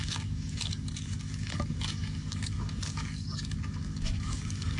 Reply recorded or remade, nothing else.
remade